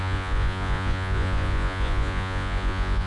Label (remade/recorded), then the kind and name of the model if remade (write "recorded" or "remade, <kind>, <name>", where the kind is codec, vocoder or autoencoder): remade, vocoder, Vocos